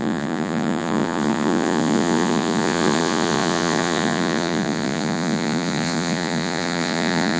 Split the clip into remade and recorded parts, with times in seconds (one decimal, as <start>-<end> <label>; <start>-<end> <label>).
0.0-7.4 remade